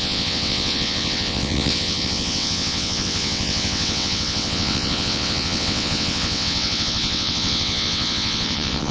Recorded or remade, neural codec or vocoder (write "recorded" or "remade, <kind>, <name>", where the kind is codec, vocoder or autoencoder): remade, vocoder, WaveNeXt